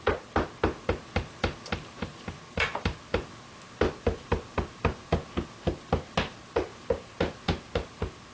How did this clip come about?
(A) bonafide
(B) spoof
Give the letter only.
A